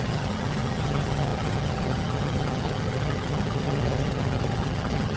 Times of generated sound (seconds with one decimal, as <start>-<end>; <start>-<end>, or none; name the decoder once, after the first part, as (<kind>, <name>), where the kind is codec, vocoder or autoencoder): 0.0-5.2 (vocoder, HiFi-GAN)